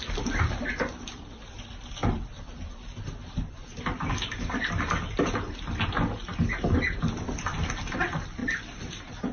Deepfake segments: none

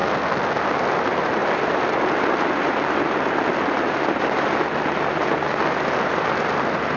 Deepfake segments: 0.8-7.0

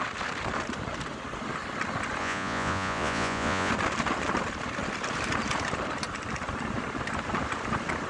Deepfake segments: 2.2-3.7

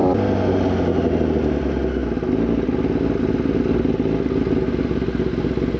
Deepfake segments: none

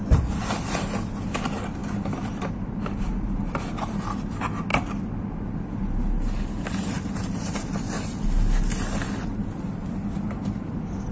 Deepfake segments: none

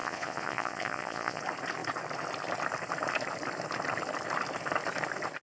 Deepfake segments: 0.0-1.4

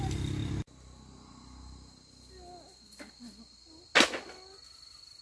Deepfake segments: 0.4-1.3

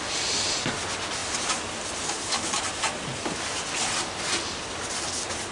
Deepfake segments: none